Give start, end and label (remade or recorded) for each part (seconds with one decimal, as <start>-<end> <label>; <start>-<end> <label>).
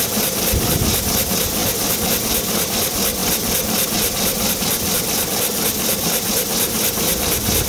0.0-1.6 remade; 1.6-2.1 recorded; 2.1-7.7 remade